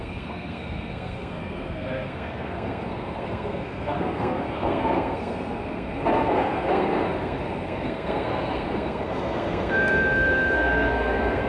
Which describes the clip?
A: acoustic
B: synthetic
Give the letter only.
B